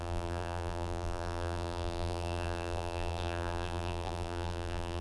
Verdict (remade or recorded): remade